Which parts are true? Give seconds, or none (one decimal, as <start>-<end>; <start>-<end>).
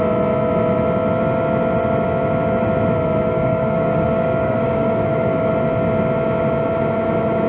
0.0-3.3; 5.5-7.5